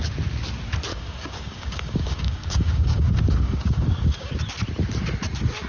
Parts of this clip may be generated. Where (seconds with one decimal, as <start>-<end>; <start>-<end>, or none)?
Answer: 0.9-4.3

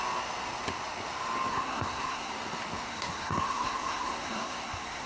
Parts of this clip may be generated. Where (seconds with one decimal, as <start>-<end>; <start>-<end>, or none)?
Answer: 1.5-2.3; 2.9-5.1

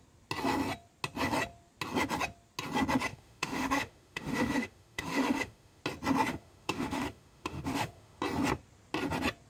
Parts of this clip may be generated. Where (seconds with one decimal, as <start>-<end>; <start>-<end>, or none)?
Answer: 3.1-5.8; 6.3-8.2